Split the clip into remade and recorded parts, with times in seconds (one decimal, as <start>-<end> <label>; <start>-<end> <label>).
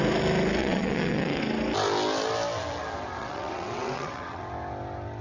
0.0-0.6 recorded; 0.6-1.4 remade; 1.4-3.2 recorded; 3.2-4.4 remade; 4.4-5.2 recorded